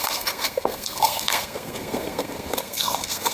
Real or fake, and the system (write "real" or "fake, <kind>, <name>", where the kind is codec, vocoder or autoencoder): fake, codec, SNAC